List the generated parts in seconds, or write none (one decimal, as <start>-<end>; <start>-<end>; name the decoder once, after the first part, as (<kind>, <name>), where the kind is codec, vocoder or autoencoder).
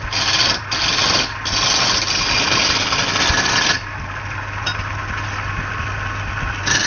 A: none